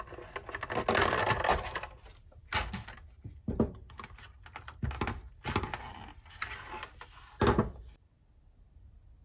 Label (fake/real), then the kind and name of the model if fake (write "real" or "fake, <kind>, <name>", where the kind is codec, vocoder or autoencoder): real